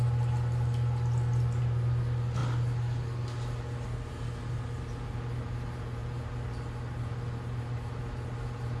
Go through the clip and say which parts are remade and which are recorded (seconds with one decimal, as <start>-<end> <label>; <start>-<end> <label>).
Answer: 0.0-8.8 recorded